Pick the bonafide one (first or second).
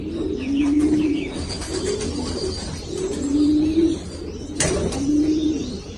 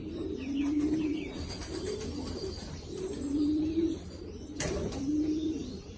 first